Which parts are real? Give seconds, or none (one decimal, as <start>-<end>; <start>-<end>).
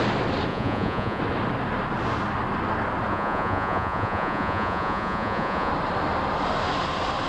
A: 0.0-0.5; 1.2-3.1; 5.7-7.3